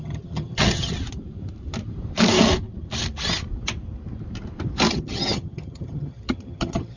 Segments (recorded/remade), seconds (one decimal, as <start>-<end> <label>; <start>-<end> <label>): 0.0-0.9 remade; 0.9-4.9 recorded; 4.9-7.0 remade

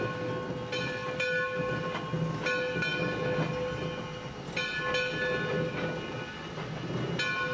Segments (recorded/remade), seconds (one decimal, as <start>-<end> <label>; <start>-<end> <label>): 0.0-7.5 recorded

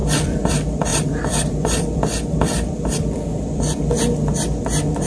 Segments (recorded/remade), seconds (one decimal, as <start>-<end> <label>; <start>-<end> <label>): 0.0-0.5 remade; 0.5-0.9 recorded; 0.9-4.0 remade; 4.0-5.1 recorded

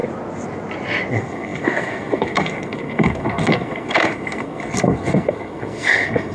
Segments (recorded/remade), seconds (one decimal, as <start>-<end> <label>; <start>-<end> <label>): 0.0-1.1 recorded; 1.1-6.3 remade

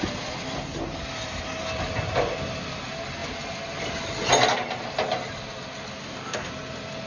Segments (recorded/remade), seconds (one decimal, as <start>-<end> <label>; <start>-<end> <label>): 0.0-6.0 recorded; 6.0-6.5 remade; 6.5-7.1 recorded